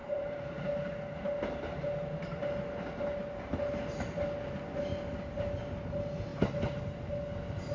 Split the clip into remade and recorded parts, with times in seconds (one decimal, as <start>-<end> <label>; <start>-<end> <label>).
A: 0.0-0.6 remade; 0.6-7.7 recorded